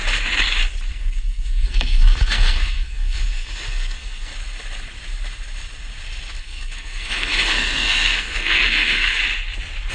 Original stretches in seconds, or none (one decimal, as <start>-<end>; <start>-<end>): 0.0-0.9; 4.3-6.4; 9.2-9.9

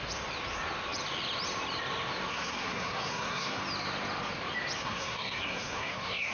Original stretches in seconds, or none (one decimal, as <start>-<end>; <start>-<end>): 0.0-2.3; 3.6-4.8

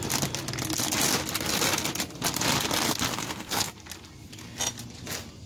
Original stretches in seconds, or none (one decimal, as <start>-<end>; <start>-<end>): 0.0-3.1; 3.7-5.5

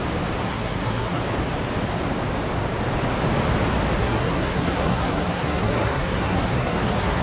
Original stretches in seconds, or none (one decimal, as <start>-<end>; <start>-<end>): 0.0-0.4; 1.2-4.0

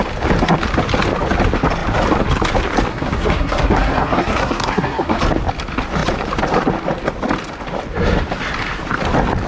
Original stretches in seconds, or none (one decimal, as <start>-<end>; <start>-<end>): 0.0-2.9; 5.2-9.5

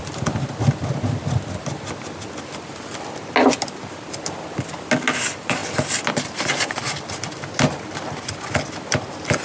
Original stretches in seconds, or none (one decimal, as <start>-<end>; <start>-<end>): 0.0-9.4

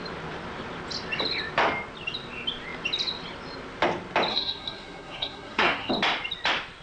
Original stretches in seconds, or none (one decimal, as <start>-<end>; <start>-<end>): 0.0-4.3; 5.9-6.8

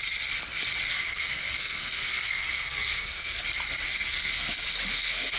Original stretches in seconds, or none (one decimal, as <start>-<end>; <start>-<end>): 0.0-0.9; 3.4-3.9; 4.5-4.9